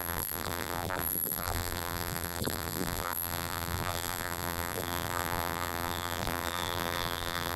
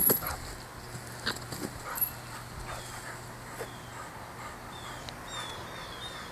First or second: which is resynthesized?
first